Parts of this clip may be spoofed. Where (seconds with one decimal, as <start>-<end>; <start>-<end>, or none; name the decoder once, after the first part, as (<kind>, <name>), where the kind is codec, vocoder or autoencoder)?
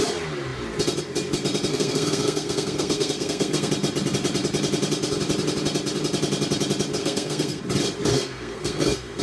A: 1.7-3.7 (codec, SNAC); 7.0-7.6; 8.1-9.2